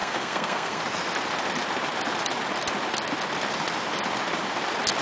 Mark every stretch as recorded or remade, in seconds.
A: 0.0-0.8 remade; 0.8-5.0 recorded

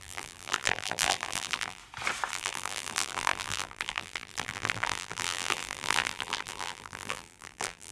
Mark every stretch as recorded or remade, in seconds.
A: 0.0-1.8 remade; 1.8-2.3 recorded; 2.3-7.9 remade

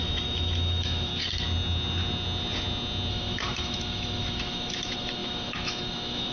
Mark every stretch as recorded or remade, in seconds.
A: 0.0-1.1 remade; 1.1-3.1 recorded; 3.1-6.3 remade